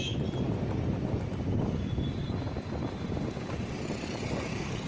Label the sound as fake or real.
real